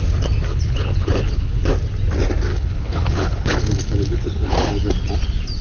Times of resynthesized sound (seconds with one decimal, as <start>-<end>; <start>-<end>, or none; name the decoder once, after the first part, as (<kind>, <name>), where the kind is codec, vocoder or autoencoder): 0.5-1.7 (codec, HILCodec); 2.5-4.9